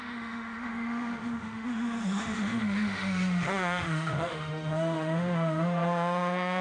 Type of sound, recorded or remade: remade